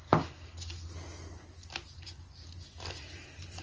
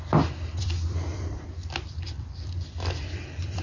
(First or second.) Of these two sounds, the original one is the first